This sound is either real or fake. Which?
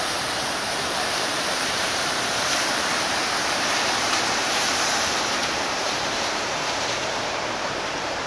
fake